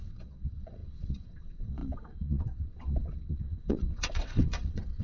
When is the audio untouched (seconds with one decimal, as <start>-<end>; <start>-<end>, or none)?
none